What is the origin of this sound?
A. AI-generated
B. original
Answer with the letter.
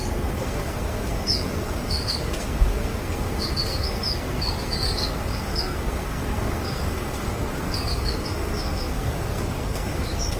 A